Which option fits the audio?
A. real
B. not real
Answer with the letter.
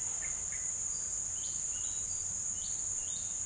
A